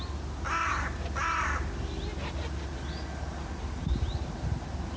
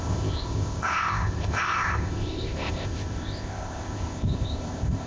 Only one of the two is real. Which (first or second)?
first